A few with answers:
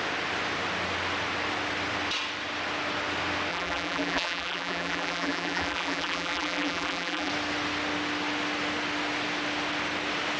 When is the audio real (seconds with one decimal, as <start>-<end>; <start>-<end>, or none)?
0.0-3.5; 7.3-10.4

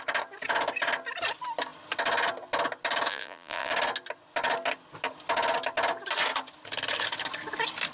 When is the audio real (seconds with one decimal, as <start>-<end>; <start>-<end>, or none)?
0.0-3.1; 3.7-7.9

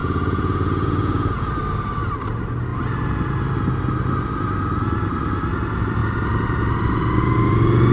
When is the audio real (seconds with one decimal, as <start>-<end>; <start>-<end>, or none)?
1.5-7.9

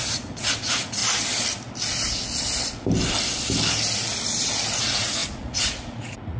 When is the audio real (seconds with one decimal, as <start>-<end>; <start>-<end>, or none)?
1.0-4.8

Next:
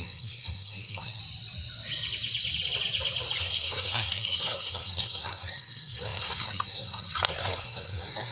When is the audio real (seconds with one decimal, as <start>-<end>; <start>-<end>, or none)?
1.2-3.4

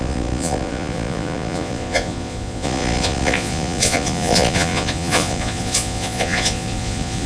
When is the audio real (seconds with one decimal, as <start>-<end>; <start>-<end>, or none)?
none

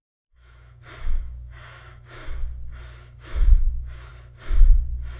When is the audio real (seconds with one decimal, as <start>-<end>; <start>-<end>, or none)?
2.2-3.1; 4.1-5.2

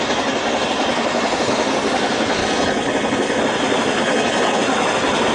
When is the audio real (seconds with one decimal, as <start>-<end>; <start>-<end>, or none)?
0.0-2.4; 3.4-4.0; 4.6-5.3